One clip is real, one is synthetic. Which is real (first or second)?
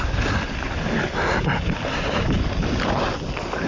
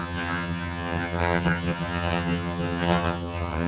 first